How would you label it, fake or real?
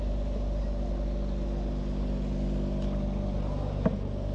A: real